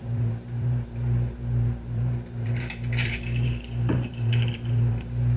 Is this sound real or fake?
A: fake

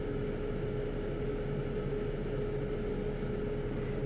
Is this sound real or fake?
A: real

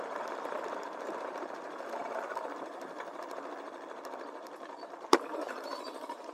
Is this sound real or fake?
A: fake